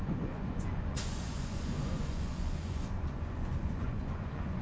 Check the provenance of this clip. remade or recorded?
remade